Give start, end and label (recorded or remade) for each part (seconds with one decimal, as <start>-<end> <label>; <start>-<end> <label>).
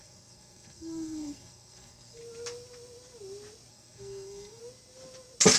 0.0-2.2 remade; 2.2-3.7 recorded; 3.7-4.6 remade; 4.6-5.6 recorded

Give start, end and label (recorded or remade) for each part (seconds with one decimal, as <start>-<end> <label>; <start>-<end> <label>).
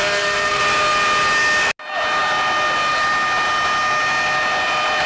0.0-0.6 remade; 0.6-5.1 recorded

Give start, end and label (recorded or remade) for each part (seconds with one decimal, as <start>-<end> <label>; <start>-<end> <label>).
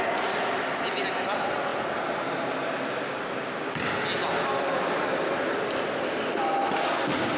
0.0-7.4 recorded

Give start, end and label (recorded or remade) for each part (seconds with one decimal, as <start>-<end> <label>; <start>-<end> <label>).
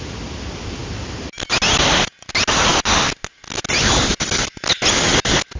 0.0-5.6 recorded